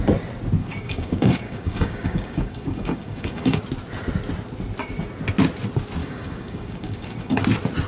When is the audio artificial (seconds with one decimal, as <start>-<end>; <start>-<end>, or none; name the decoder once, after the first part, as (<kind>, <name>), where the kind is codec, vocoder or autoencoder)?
0.6-3.6 (codec, DAC); 6.0-7.4

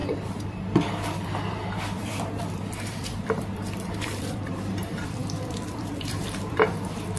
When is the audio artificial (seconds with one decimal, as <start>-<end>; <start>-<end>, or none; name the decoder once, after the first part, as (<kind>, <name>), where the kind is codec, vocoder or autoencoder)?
0.0-7.2 (vocoder, BigVGAN v2)

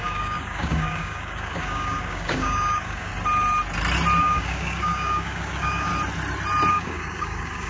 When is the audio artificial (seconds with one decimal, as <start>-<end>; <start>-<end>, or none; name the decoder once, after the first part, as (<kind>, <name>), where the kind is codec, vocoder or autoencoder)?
0.0-3.1 (codec, DAC); 4.2-5.9; 6.7-7.7

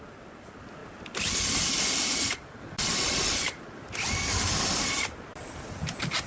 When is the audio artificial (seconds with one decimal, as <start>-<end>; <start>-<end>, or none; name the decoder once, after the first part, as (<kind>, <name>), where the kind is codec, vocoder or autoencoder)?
none

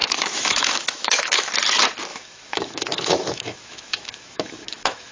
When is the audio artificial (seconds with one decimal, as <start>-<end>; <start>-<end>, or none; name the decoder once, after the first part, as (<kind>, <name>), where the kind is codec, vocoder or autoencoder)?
0.0-1.5 (autoencoder, DAC-VAE); 2.1-5.1